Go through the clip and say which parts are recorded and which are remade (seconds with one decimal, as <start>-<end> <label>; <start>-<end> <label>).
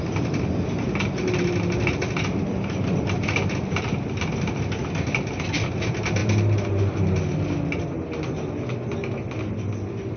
0.0-10.2 recorded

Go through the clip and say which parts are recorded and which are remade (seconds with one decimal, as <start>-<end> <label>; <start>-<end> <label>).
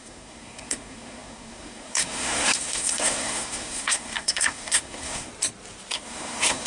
0.0-5.3 remade; 5.3-5.9 recorded; 5.9-6.7 remade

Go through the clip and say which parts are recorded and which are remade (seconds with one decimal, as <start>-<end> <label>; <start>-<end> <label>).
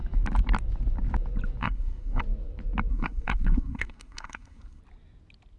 0.0-1.6 recorded; 1.6-2.2 remade; 2.2-2.9 recorded; 2.9-4.8 remade; 4.8-5.6 recorded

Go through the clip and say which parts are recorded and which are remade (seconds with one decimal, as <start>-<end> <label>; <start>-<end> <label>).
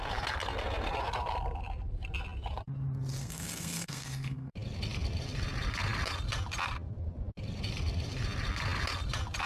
0.0-3.2 recorded; 3.2-4.5 remade; 4.5-9.5 recorded